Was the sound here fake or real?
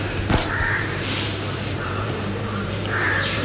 fake